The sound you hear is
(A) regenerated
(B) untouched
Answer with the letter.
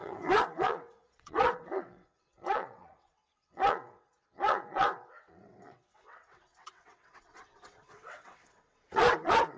A